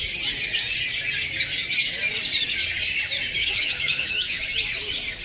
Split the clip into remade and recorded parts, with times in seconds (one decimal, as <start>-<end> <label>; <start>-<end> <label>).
0.0-3.4 recorded; 3.4-4.4 remade; 4.4-5.2 recorded